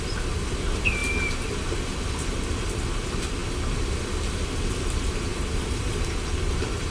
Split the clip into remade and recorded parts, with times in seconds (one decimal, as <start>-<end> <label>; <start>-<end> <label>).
0.0-6.9 recorded